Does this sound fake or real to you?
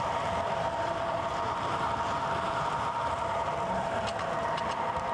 fake